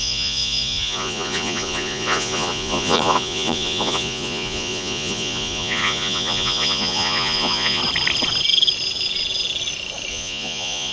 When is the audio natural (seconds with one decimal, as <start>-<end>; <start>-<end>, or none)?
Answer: 7.8-10.1